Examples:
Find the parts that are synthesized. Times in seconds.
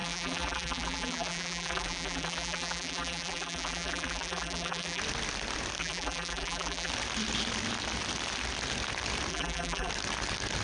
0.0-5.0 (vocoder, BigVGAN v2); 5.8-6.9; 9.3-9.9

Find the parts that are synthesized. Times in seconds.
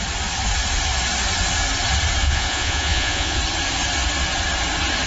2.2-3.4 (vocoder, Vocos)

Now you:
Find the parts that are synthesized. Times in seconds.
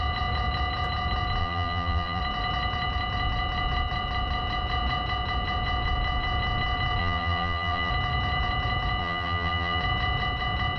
1.4-2.2 (vocoder, BigVGAN v2); 7.0-7.9; 9.0-9.8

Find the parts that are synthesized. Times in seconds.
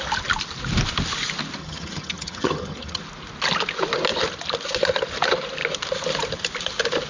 1.6-3.0 (vocoder, HiFi-GAN)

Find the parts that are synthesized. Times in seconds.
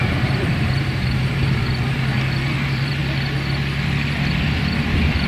0.0-3.0 (vocoder, BigVGAN v2); 4.8-5.3